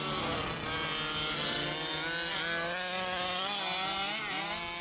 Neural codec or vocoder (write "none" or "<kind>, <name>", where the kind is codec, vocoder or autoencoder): none